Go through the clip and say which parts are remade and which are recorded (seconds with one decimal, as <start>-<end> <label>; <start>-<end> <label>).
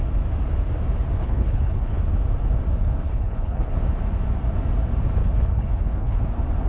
0.0-1.2 recorded; 1.2-2.0 remade; 2.0-2.8 recorded; 2.8-3.7 remade; 3.7-5.2 recorded; 5.2-6.2 remade; 6.2-6.7 recorded